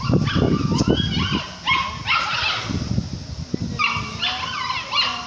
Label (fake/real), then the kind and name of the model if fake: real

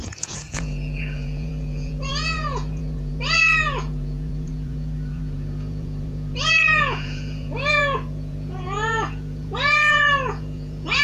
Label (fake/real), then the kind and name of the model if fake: fake, vocoder, Vocos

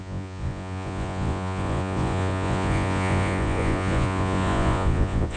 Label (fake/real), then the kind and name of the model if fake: fake, vocoder, Vocos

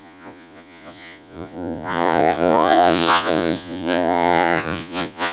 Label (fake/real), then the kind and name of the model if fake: fake, vocoder, Vocos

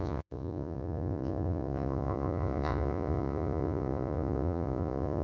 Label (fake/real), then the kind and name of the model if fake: fake, vocoder, Vocos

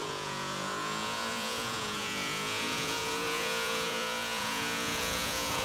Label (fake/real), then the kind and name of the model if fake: fake, vocoder, Vocos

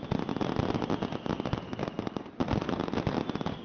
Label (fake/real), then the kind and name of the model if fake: real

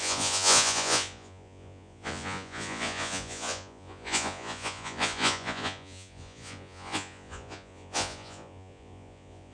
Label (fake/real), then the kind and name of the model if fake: fake, vocoder, Vocos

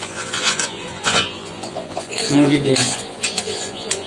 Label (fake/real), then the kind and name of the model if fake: fake, vocoder, Vocos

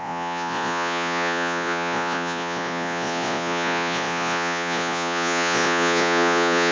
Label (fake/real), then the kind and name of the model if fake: fake, vocoder, Vocos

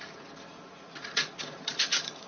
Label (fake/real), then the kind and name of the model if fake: fake, vocoder, Vocos